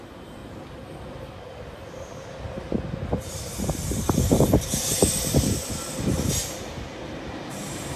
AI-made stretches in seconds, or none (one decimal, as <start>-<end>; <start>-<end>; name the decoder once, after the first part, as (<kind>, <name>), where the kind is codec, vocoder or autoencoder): 0.0-0.4 (vocoder, BigVGAN v2); 4.0-8.0